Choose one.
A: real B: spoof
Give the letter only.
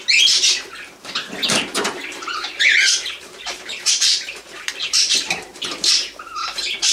B